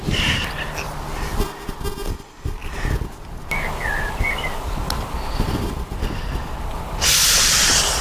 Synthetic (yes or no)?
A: no